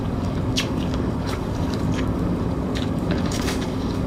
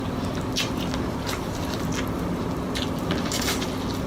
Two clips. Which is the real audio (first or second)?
second